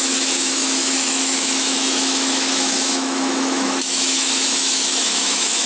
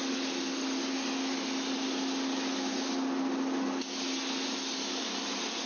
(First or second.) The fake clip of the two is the first